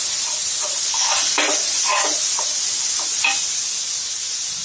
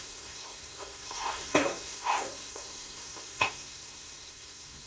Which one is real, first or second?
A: first